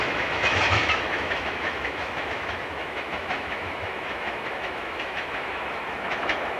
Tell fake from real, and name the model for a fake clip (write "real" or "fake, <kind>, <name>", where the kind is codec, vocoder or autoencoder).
fake, autoencoder, DAC-VAE